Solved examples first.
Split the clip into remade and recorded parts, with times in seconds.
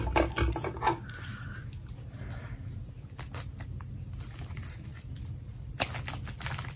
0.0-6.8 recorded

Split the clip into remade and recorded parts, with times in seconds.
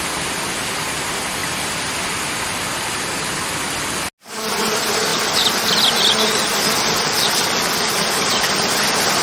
0.0-1.4 recorded; 1.4-2.1 remade; 2.1-5.1 recorded; 5.1-7.8 remade; 7.8-9.2 recorded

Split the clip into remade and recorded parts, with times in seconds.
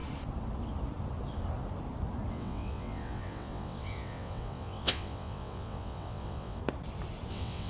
0.0-2.3 recorded; 2.3-6.6 remade; 6.6-7.3 recorded; 7.3-7.7 remade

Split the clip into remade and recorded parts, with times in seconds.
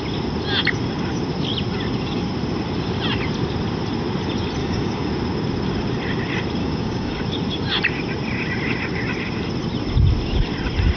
0.0-4.6 recorded; 4.6-5.1 remade; 5.1-6.6 recorded; 6.6-7.2 remade; 7.2-11.0 recorded